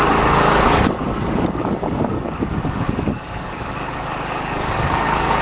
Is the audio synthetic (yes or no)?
yes